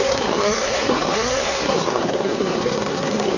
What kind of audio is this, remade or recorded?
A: remade